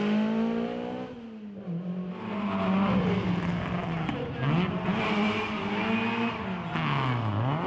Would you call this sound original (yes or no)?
yes